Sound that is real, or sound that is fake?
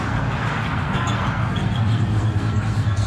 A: fake